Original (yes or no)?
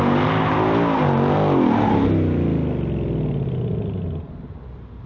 yes